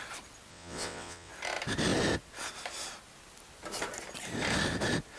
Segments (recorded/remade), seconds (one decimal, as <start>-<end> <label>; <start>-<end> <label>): 0.0-0.5 recorded; 0.5-1.3 remade; 1.3-5.2 recorded